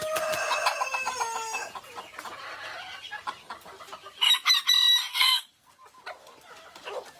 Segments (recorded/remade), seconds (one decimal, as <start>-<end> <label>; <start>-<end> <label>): 0.0-5.1 recorded; 5.1-5.7 remade; 5.7-7.2 recorded